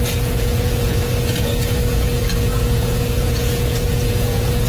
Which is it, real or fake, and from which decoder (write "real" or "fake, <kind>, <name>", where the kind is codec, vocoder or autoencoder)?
fake, vocoder, Vocos